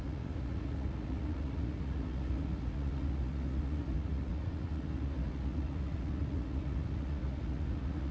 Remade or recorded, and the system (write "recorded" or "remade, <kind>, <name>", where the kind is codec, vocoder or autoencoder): remade, vocoder, Vocos